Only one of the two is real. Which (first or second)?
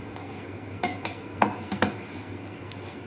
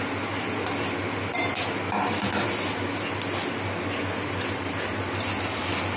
second